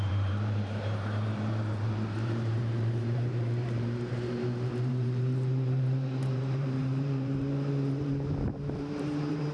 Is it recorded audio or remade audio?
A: remade